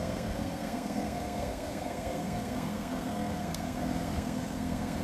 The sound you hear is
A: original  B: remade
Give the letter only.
B